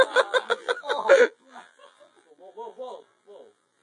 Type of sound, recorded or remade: remade